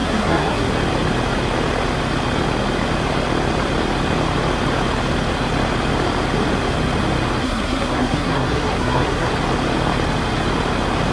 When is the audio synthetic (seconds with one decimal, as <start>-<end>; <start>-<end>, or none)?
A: 0.0-0.7; 7.4-9.3